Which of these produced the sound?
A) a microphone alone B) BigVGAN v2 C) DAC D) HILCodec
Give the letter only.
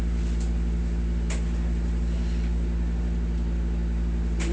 A